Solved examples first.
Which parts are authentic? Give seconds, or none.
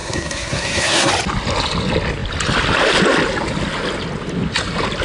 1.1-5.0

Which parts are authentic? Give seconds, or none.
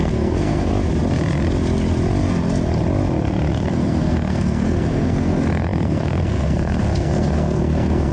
0.7-3.5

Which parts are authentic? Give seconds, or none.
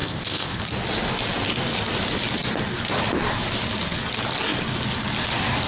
0.6-5.7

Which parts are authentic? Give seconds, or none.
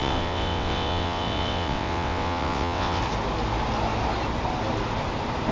3.0-5.5